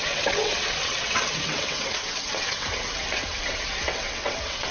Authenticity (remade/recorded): remade